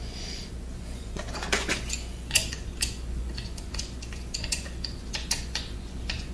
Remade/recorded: remade